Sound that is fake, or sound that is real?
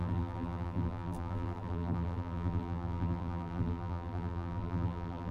fake